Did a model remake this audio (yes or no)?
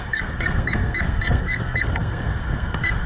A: yes